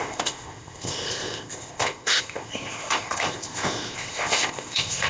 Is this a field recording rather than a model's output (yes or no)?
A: no